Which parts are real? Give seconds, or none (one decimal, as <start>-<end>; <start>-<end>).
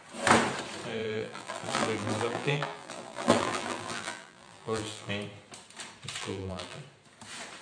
0.0-1.0; 5.1-6.2; 6.8-7.6